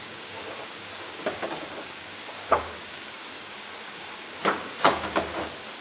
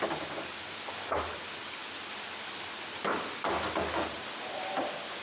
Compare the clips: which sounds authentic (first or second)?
second